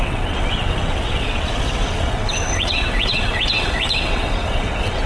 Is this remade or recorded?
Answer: remade